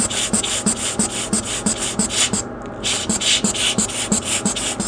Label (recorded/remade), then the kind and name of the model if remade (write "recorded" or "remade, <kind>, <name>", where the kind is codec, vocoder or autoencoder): recorded